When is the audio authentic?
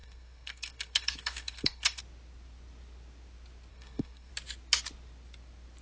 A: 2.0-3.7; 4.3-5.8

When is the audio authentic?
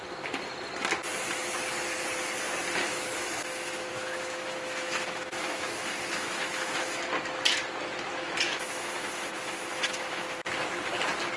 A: 0.0-2.8; 7.0-8.1; 10.2-11.4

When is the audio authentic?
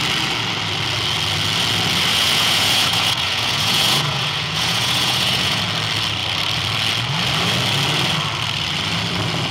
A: 0.0-2.1; 5.6-9.5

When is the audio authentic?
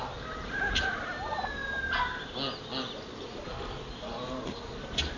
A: 0.0-5.2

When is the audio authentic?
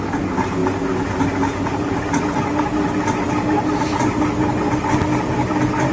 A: 0.0-5.9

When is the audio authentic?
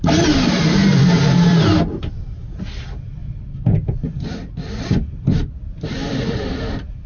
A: none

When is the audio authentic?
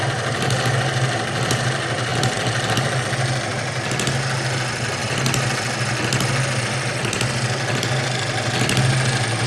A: 0.0-9.5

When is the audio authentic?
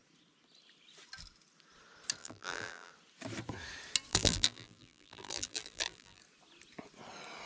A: 0.0-2.2; 2.9-4.1; 6.2-7.5